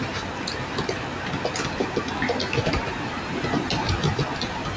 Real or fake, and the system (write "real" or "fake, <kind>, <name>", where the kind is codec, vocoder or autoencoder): real